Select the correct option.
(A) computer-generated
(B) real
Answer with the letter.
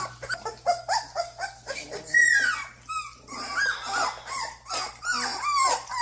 B